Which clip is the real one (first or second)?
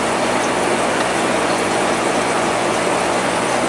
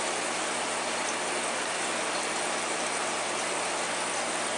second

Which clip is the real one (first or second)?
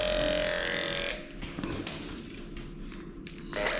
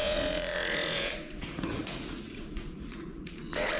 first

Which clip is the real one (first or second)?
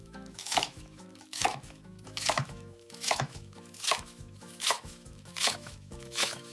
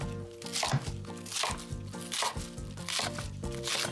second